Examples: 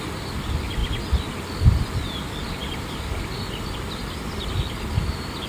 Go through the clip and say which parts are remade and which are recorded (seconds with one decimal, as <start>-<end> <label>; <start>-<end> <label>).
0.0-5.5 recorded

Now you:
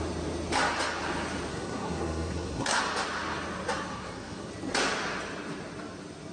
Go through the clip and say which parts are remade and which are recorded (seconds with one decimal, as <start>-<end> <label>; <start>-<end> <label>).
0.0-1.5 recorded; 1.5-2.8 remade; 2.8-3.9 recorded; 3.9-4.5 remade; 4.5-6.3 recorded

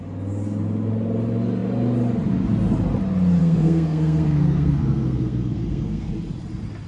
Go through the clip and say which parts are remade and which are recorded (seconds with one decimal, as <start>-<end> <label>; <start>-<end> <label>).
0.0-3.4 recorded; 3.4-6.1 remade; 6.1-6.9 recorded

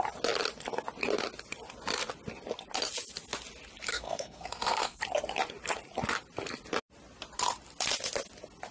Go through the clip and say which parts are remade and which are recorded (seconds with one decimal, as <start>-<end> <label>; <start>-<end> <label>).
0.0-3.9 recorded; 3.9-5.0 remade; 5.0-8.7 recorded